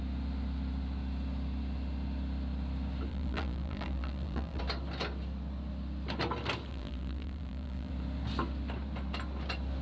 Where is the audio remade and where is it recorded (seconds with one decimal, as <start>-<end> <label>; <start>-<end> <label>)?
0.0-3.1 recorded; 3.1-4.6 remade; 4.6-6.7 recorded; 6.7-7.9 remade; 7.9-9.8 recorded